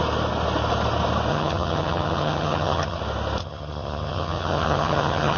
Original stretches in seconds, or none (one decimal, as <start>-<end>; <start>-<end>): 0.0-1.3; 3.0-3.4